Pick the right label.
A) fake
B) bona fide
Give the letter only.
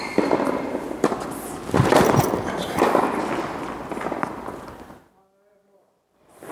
B